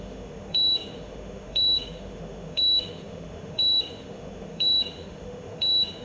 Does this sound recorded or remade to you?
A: remade